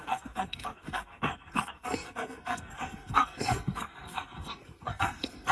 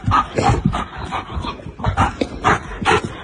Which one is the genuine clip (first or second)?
second